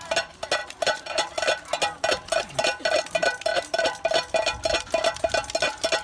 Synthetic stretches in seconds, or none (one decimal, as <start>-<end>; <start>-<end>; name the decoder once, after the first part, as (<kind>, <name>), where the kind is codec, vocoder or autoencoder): none